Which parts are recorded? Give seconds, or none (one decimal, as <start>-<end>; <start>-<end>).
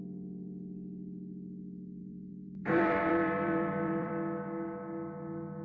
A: 0.0-2.0; 4.1-5.6